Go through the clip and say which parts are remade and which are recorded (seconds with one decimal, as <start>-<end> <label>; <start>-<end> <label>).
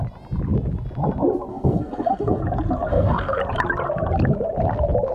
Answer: 0.0-1.5 recorded; 1.5-2.4 remade; 2.4-2.9 recorded; 2.9-3.4 remade; 3.4-5.1 recorded